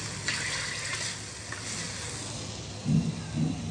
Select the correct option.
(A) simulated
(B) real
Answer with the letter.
B